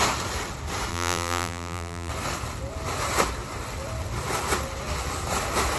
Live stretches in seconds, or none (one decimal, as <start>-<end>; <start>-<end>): 0.0-0.9; 2.1-5.8